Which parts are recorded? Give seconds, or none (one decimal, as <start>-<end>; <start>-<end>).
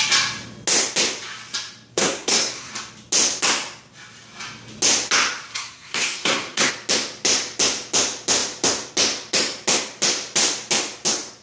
0.0-1.9; 2.7-5.5; 6.7-11.4